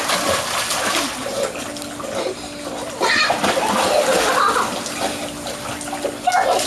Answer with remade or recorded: recorded